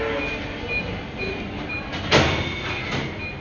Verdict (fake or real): real